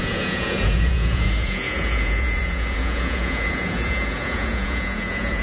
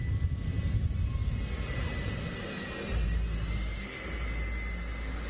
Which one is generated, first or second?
first